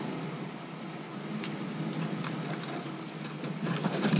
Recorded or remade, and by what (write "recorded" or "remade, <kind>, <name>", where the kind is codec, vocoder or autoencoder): recorded